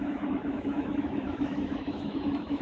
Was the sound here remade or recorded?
remade